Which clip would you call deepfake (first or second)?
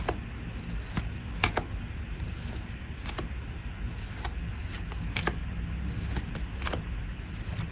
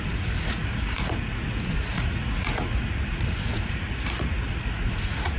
second